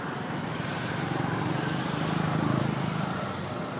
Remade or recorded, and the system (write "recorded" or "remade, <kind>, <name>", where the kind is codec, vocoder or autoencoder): recorded